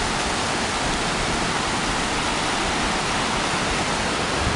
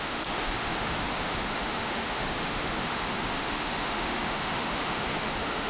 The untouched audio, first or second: first